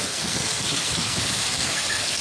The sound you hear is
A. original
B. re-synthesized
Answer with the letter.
B